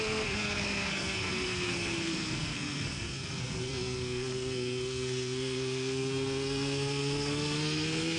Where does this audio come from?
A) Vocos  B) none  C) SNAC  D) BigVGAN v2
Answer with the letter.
C